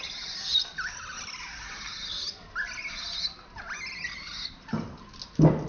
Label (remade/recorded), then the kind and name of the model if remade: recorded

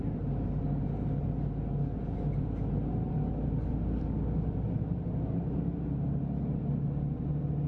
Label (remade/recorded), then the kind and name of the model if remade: recorded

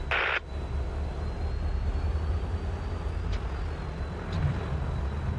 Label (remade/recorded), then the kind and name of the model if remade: recorded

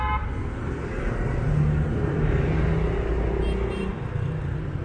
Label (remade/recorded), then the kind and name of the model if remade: recorded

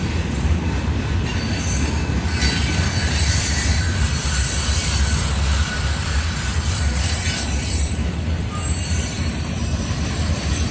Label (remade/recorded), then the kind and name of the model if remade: remade, vocoder, BigVGAN v2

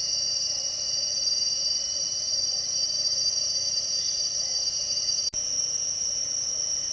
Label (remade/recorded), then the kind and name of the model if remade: remade, vocoder, BigVGAN v2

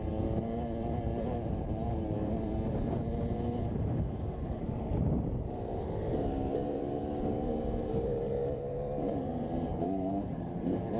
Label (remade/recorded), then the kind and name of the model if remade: remade, vocoder, BigVGAN v2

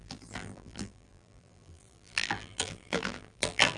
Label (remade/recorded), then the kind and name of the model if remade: remade, vocoder, BigVGAN v2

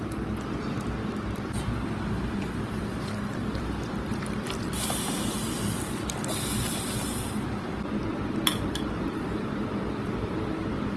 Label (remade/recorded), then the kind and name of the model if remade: remade, vocoder, BigVGAN v2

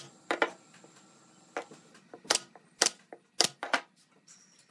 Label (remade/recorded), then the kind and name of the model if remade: recorded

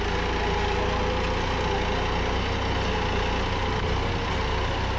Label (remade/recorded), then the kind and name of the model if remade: recorded